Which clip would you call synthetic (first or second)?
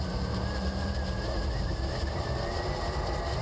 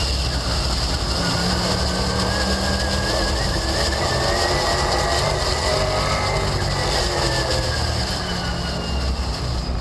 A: first